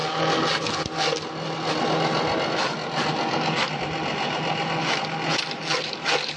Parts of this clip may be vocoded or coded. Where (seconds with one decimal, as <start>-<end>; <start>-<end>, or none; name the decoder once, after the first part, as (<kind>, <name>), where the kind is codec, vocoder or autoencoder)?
none